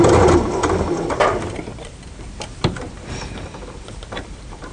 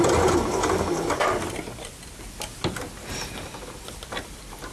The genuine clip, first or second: second